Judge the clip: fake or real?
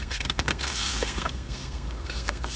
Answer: fake